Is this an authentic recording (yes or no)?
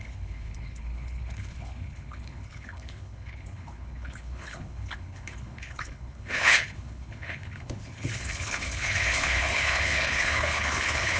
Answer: no